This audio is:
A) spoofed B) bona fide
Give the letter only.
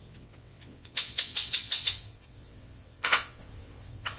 A